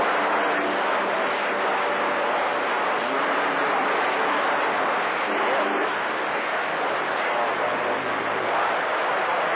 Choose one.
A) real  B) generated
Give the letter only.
A